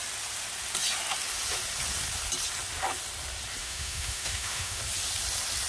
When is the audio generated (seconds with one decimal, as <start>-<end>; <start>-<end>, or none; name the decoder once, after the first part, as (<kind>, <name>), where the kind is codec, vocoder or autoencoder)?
3.6-4.8 (autoencoder, DAC-VAE)